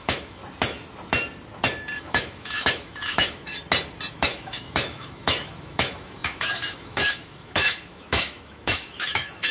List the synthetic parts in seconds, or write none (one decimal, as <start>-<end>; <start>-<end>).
0.0-0.4; 2.0-3.5; 4.1-9.5